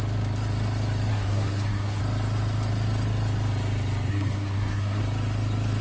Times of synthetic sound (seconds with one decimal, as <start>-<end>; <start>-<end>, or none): 1.1-2.0; 4.1-5.0